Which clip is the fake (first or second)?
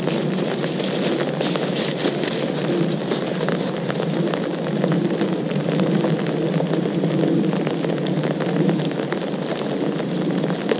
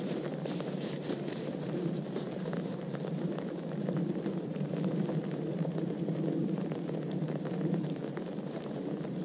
second